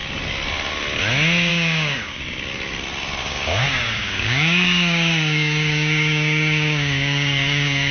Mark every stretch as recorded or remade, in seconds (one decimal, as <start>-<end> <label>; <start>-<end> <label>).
0.0-1.5 recorded; 1.5-2.2 remade; 2.2-3.2 recorded; 3.2-7.9 remade